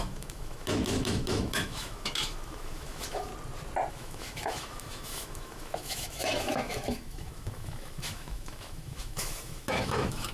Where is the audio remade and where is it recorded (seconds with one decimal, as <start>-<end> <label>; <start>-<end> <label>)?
0.0-3.3 remade; 3.3-3.9 recorded; 3.9-10.3 remade